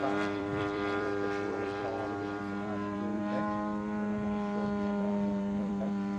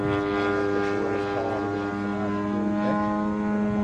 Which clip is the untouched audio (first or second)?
second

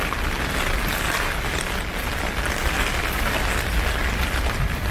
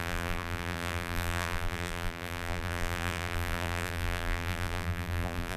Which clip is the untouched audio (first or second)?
first